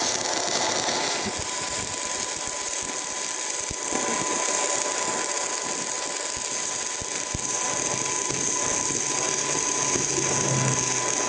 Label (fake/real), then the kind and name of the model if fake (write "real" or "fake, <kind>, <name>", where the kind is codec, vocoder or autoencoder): real